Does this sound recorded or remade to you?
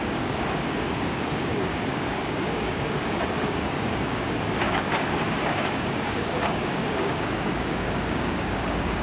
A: remade